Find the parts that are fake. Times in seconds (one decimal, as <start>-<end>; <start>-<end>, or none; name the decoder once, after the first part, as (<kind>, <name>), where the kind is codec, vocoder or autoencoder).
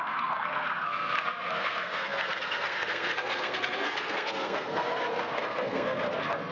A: 0.0-6.5 (codec, SNAC)